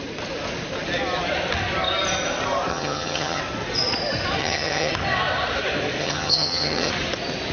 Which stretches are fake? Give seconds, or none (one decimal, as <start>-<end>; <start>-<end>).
2.7-3.4; 4.4-4.9; 6.0-6.9